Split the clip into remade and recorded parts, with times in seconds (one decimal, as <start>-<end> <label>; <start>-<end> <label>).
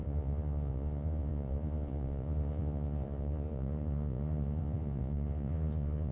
0.0-6.1 remade